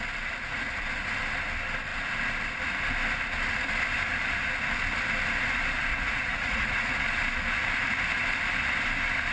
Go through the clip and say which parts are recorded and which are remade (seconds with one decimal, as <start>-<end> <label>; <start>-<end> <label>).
0.0-5.9 recorded; 5.9-7.0 remade; 7.0-9.3 recorded